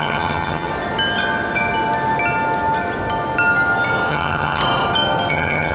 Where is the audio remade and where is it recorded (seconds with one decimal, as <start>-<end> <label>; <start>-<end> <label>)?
0.0-0.7 remade; 0.7-4.1 recorded; 4.1-4.6 remade; 4.6-5.3 recorded; 5.3-5.7 remade